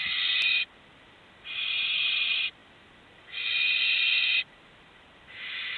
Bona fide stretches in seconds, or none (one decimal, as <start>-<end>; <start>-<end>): 0.0-5.8